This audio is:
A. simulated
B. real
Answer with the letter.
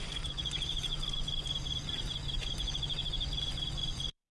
A